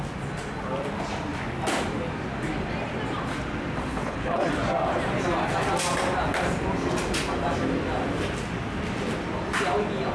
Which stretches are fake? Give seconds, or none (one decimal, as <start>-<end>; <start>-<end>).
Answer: 3.9-4.5